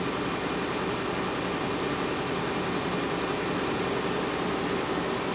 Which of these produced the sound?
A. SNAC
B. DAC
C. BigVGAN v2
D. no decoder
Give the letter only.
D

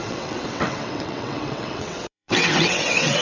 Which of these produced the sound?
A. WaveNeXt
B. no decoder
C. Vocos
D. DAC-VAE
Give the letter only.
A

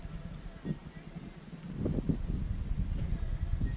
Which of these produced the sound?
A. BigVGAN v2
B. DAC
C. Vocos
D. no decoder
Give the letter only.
D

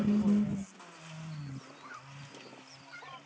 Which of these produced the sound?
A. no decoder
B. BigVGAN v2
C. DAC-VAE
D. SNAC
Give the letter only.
A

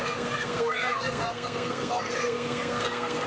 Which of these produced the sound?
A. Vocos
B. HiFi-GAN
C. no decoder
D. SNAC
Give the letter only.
D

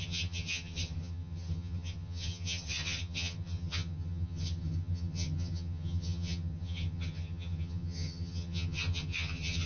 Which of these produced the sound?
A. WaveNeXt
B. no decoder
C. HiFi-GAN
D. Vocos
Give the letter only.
C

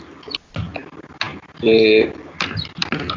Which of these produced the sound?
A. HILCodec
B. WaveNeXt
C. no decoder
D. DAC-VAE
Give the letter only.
C